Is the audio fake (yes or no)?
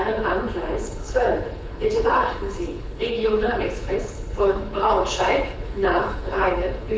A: yes